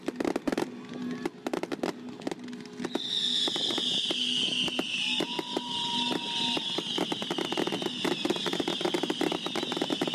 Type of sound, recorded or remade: recorded